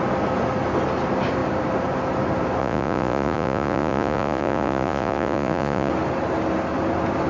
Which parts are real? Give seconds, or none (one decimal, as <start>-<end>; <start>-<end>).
0.0-2.6; 5.9-7.3